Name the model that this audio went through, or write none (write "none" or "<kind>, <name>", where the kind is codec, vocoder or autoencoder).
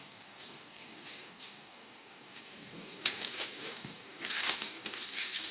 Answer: codec, DAC